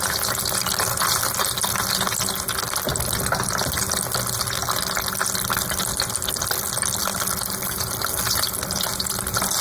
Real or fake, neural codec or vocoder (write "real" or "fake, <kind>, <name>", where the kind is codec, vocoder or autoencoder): real